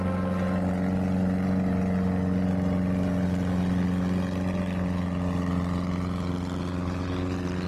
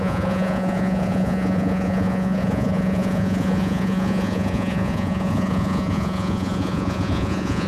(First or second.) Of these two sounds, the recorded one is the first